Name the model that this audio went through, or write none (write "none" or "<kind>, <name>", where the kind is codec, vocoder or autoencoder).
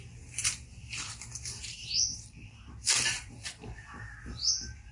vocoder, BigVGAN v2